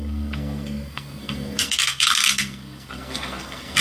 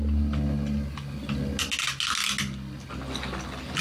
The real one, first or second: second